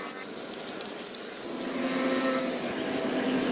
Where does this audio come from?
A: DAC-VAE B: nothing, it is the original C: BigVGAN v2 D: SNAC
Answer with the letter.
B